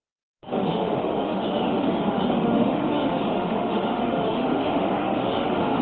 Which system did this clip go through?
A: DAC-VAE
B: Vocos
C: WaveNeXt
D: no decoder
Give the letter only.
A